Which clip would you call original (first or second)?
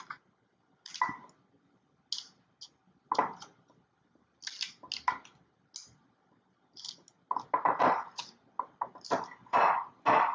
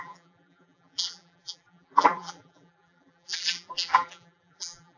first